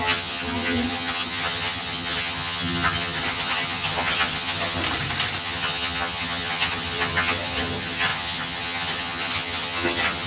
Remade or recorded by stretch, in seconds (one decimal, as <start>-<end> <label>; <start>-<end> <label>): 0.0-4.8 remade; 4.8-5.4 recorded; 5.4-10.3 remade